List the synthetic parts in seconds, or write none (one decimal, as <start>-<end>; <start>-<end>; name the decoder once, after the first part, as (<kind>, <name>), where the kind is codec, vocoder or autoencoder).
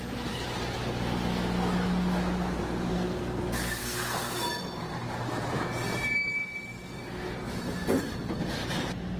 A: 2.9-3.4 (codec, SNAC); 3.8-4.3